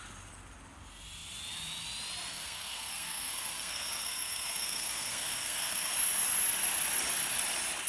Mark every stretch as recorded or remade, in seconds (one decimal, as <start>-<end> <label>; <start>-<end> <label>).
0.0-2.3 recorded; 2.3-5.9 remade; 5.9-7.9 recorded